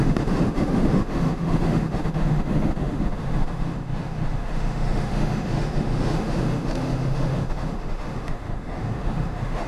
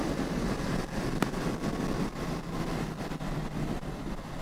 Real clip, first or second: second